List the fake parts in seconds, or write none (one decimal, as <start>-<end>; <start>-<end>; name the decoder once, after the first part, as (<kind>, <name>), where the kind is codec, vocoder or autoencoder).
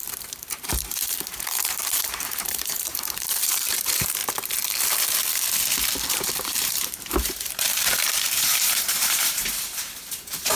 0.0-4.2 (vocoder, BigVGAN v2); 6.1-10.6